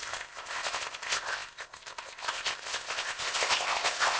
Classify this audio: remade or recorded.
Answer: remade